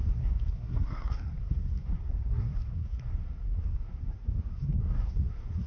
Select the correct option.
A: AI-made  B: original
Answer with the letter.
A